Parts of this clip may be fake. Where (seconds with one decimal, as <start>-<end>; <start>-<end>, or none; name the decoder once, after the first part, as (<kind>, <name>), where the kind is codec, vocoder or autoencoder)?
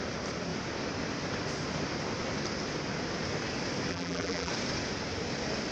3.9-4.5 (vocoder, BigVGAN v2)